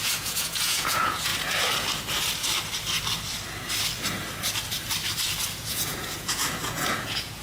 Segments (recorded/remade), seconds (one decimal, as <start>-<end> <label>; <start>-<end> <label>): 0.0-1.3 remade; 1.3-5.7 recorded; 5.7-7.4 remade